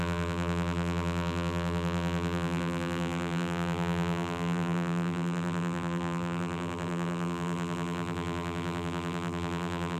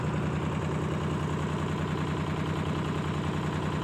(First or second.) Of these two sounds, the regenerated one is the first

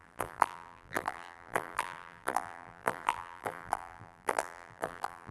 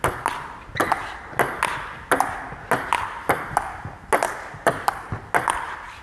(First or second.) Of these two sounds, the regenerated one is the first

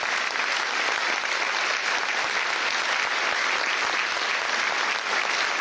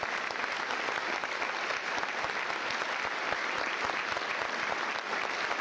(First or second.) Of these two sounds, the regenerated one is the second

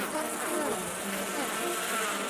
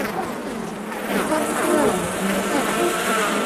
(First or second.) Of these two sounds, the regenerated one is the second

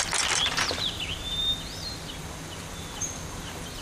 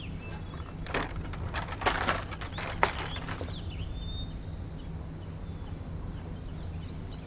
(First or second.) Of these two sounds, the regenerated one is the first